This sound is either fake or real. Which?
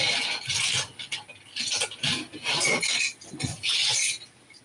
real